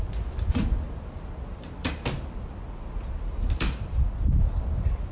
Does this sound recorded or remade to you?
recorded